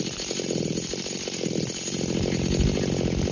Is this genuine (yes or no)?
yes